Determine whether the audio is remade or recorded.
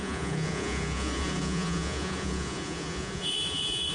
remade